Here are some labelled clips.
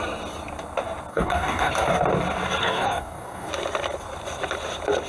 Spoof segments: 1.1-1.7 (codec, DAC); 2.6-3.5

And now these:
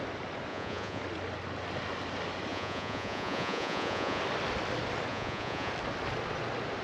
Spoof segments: 0.5-1.0 (vocoder, Vocos); 2.5-4.2; 5.1-5.7

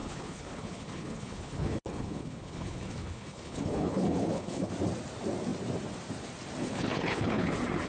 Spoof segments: 0.0-4.7 (codec, HILCodec); 6.6-7.5

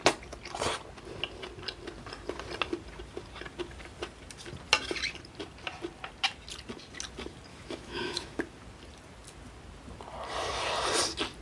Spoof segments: 7.5-8.4 (autoencoder, DAC-VAE)

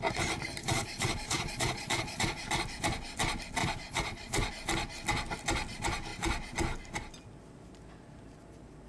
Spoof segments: 0.6-2.4 (vocoder, Vocos); 3.6-4.5

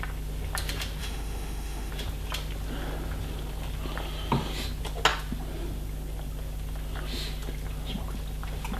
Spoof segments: 1.0-1.9 (autoencoder, DAC-VAE)

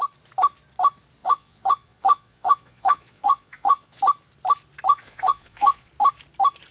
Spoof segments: 1.2-4.0 (vocoder, Vocos); 4.9-5.9